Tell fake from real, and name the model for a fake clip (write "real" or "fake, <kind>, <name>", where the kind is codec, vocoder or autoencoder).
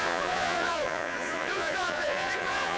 fake, vocoder, Vocos